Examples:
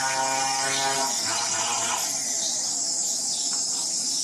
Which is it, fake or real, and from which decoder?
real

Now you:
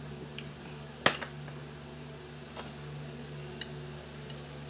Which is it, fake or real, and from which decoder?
real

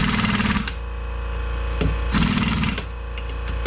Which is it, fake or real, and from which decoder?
real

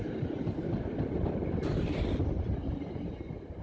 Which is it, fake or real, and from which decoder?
real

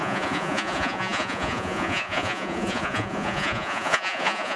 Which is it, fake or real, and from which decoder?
fake, vocoder, Vocos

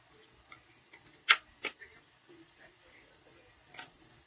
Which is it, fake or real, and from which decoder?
real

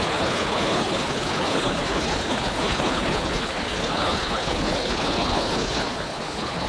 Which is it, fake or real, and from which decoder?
fake, codec, HILCodec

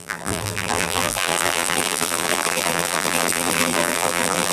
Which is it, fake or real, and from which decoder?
fake, vocoder, BigVGAN v2